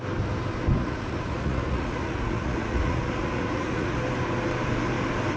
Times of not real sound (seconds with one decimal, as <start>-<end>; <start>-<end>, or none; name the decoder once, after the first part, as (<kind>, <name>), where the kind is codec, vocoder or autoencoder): 0.8-4.0 (vocoder, Vocos)